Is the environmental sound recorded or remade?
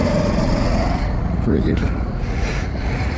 remade